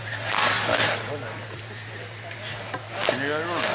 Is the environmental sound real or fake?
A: real